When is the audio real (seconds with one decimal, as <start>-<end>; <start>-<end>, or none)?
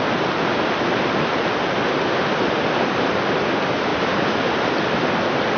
0.0-3.9; 4.6-5.6